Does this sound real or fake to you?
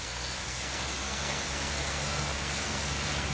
fake